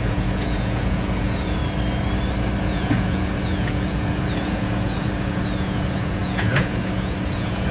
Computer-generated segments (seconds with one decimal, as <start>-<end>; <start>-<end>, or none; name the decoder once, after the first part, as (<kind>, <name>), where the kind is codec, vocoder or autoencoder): 0.0-1.6 (vocoder, Vocos); 2.6-7.7